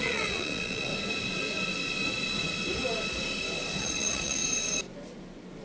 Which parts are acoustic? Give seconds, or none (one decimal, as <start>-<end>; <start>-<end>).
0.9-3.8; 4.4-5.6